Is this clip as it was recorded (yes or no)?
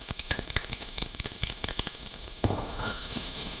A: no